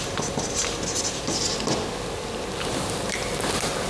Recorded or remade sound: recorded